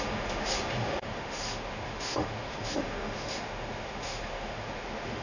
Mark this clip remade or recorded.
remade